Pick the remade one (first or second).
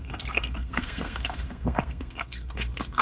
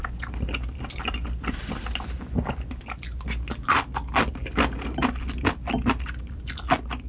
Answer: first